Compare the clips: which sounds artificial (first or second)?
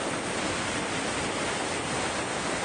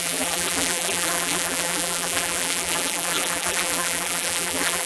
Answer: second